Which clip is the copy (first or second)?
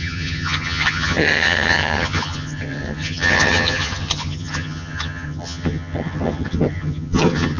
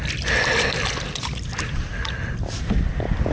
first